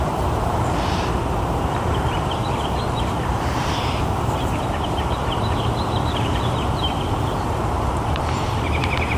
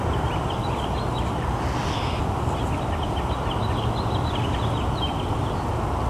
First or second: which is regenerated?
first